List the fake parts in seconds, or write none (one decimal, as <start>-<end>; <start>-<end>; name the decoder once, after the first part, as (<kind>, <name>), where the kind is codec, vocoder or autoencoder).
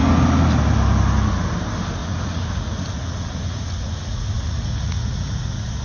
2.0-5.8 (vocoder, Vocos)